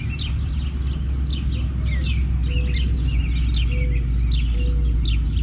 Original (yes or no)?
yes